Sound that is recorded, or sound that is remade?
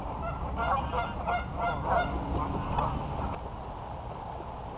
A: recorded